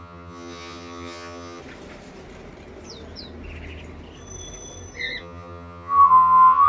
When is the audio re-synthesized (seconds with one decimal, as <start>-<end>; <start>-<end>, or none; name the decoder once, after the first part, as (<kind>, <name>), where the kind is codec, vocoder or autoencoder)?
0.0-1.6 (vocoder, HiFi-GAN); 5.2-6.7